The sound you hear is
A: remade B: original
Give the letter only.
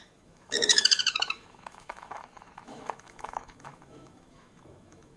A